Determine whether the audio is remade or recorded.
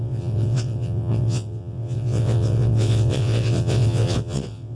remade